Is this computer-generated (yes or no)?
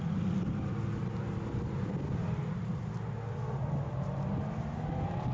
no